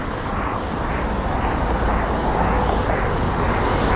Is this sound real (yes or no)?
yes